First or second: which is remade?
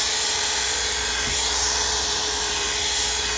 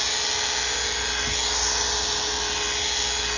first